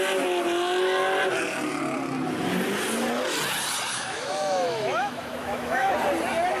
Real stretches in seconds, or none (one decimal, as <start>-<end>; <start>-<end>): 0.0-3.9; 5.9-6.6